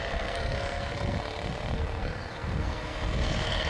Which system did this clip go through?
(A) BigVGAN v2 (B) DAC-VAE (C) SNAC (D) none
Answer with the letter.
C